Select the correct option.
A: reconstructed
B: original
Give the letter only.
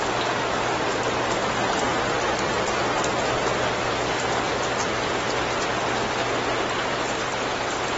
B